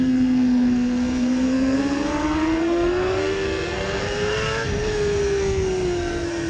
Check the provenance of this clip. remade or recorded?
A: remade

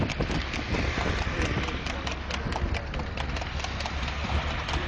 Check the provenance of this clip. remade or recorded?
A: recorded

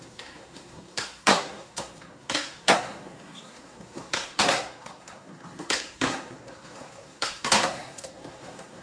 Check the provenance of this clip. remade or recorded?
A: remade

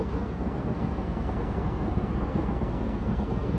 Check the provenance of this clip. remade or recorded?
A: remade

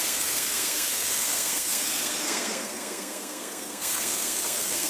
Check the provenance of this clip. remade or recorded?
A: remade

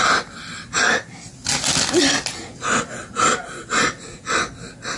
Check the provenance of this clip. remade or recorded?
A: recorded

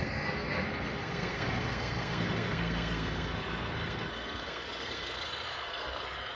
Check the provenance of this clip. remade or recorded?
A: remade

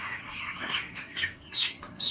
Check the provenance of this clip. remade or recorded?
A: remade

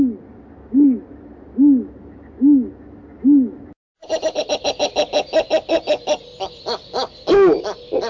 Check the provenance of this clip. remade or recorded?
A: recorded